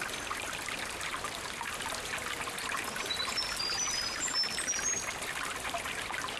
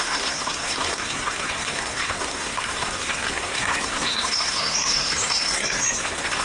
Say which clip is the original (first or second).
first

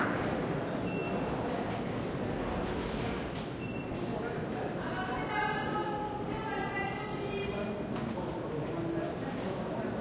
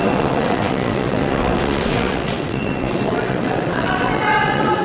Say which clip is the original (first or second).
first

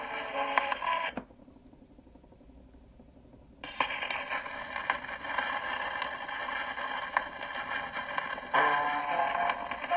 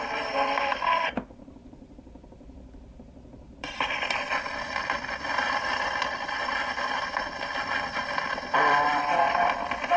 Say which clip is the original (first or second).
first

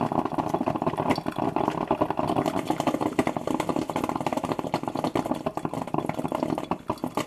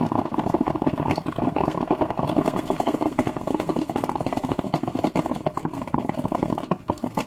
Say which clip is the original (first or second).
first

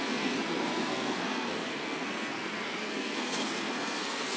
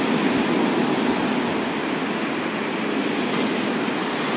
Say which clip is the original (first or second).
second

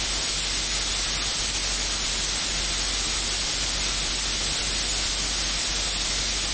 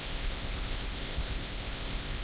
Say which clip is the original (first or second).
first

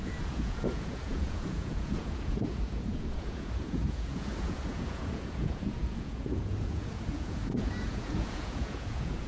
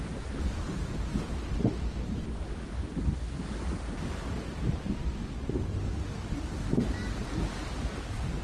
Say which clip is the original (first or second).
second